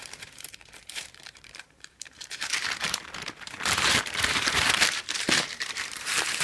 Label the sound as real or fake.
fake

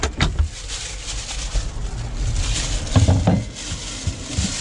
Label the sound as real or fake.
real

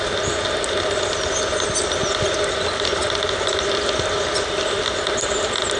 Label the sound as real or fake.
real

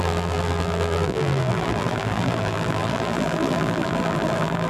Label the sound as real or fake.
fake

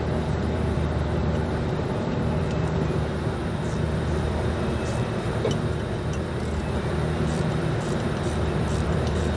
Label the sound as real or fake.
fake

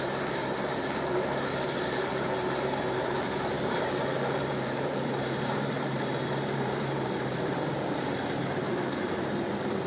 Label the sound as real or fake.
fake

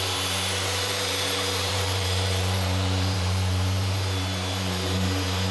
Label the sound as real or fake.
fake